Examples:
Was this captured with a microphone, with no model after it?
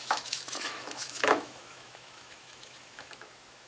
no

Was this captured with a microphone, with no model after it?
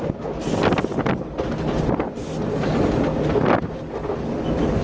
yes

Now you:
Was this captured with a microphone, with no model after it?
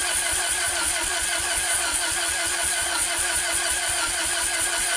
no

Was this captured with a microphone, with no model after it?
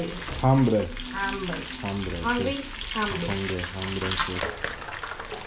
yes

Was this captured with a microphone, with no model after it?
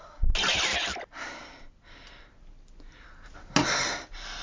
yes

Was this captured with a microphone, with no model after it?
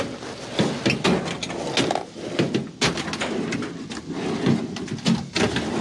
yes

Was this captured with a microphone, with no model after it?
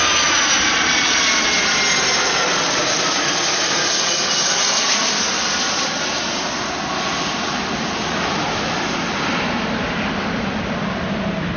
yes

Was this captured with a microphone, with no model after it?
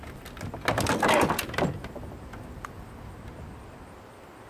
yes